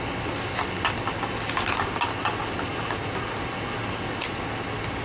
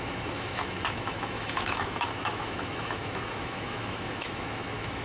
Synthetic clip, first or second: second